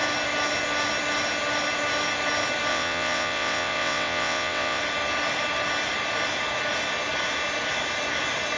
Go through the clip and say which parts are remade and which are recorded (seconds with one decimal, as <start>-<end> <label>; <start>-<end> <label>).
0.0-2.7 recorded; 2.7-4.8 remade; 4.8-8.6 recorded

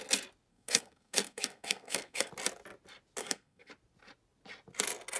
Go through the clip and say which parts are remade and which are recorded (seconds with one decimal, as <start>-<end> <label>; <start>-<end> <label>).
0.0-0.5 recorded; 0.5-2.3 remade; 2.3-3.2 recorded; 3.2-3.7 remade; 3.7-5.2 recorded